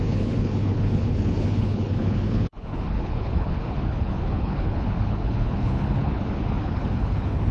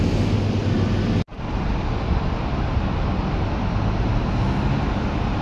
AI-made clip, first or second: first